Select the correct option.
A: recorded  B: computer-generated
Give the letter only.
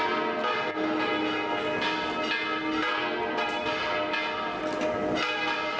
A